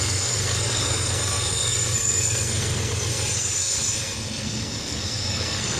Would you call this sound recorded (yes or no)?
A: no